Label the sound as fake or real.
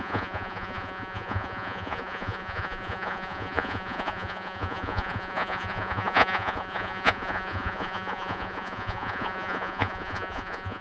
fake